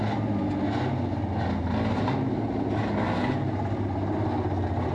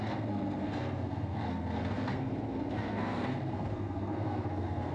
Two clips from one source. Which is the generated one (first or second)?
second